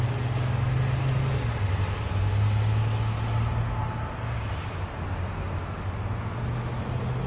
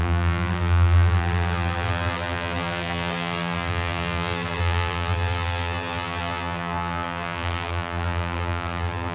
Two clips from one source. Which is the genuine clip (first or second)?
first